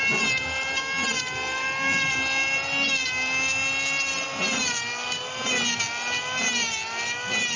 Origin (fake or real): real